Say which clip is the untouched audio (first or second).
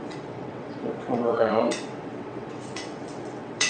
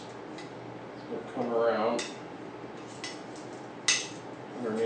second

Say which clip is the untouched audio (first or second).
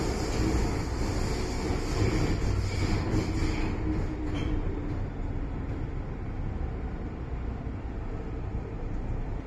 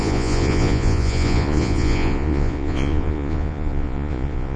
first